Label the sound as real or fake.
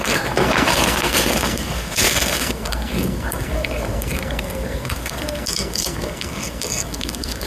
fake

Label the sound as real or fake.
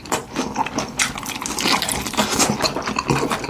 real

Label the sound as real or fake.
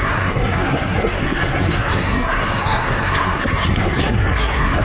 fake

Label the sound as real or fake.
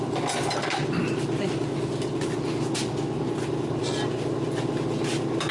real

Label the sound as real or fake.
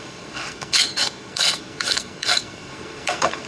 fake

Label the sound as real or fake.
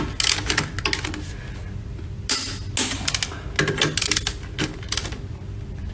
real